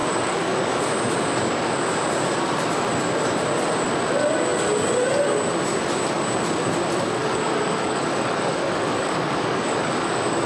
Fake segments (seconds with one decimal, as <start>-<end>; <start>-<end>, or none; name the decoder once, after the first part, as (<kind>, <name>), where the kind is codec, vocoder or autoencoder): 0.0-0.8 (codec, DAC); 7.2-10.5